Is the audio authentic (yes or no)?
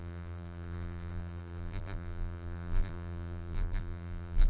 no